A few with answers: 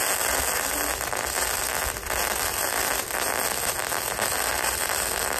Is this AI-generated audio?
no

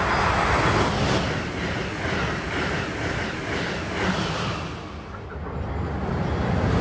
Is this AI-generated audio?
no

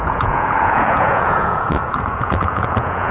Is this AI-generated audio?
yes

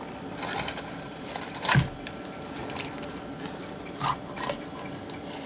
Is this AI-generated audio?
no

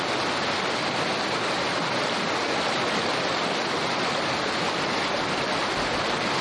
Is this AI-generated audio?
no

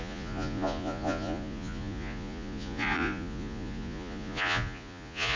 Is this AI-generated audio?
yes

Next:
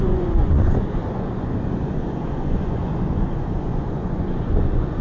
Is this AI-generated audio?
yes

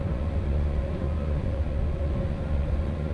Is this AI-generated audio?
yes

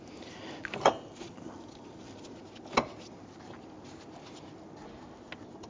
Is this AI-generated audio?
no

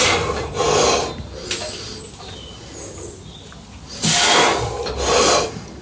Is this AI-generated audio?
no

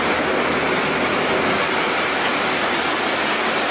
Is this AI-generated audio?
no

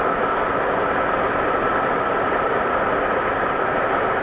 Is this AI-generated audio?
no